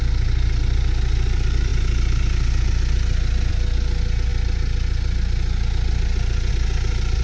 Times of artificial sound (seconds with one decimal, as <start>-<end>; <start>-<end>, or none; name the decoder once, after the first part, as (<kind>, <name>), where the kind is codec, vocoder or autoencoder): none